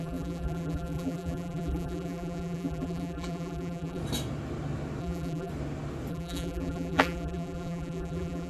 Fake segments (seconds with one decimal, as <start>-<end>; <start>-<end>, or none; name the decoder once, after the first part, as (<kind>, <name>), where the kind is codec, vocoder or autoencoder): 0.0-4.0 (vocoder, BigVGAN v2); 5.0-5.5; 6.1-8.5